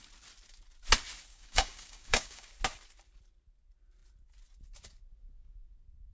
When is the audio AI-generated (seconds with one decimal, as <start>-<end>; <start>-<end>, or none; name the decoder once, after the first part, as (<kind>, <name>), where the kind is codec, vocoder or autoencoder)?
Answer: 1.3-2.5 (codec, DAC)